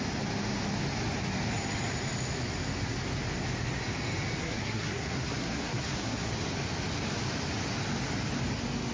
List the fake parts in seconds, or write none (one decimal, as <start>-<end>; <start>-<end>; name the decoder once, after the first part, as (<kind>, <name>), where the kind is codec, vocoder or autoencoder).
4.4-6.3 (codec, SNAC)